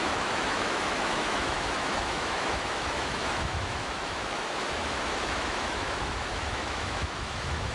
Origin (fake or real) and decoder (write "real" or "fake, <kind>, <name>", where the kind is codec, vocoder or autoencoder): fake, autoencoder, DAC-VAE